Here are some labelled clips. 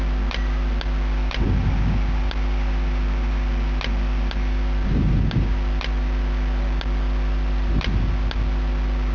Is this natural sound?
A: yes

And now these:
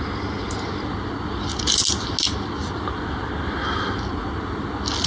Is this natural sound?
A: yes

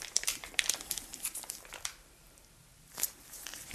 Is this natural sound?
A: yes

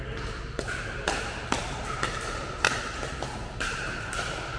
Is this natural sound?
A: no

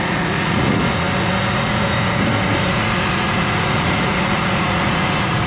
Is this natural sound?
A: no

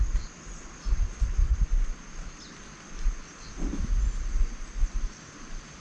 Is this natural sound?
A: yes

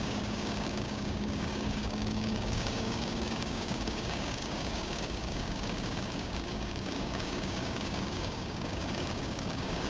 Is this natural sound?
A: no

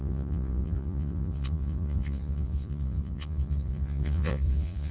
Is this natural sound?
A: no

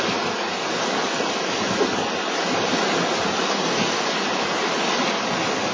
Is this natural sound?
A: yes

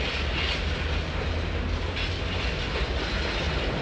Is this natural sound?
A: yes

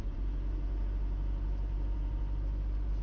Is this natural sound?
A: yes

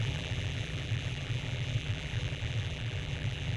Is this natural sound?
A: no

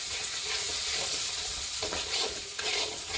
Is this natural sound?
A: no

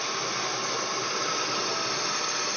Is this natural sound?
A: yes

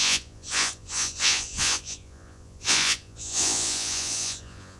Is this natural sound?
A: no